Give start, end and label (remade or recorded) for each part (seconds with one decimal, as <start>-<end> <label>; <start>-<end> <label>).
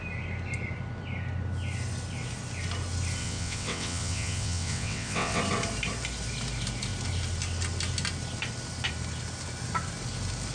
0.0-3.2 recorded; 3.2-5.4 remade; 5.4-10.5 recorded